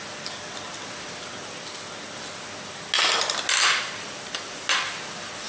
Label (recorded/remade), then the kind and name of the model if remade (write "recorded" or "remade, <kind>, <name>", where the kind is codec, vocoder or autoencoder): recorded